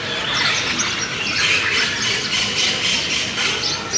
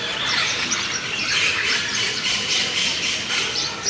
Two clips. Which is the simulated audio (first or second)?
second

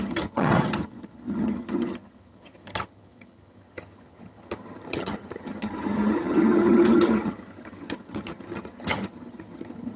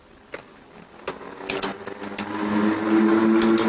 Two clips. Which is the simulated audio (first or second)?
first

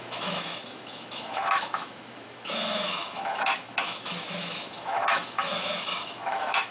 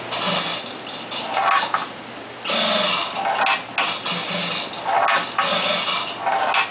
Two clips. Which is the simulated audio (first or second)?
first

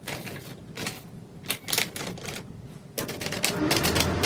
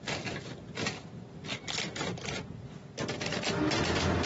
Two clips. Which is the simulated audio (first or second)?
first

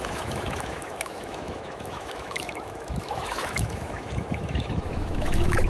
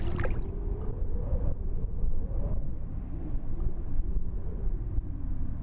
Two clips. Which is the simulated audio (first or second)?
first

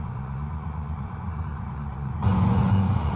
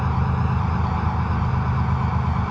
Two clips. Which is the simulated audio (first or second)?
first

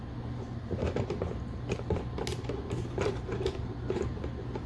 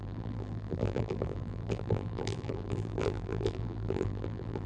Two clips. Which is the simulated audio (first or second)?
second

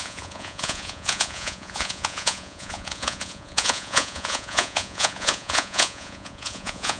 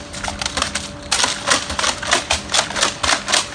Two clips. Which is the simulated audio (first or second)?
first